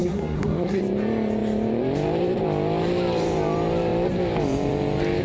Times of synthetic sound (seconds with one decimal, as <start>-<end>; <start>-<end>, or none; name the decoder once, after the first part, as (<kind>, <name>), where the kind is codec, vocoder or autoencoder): 0.0-0.8 (codec, SNAC)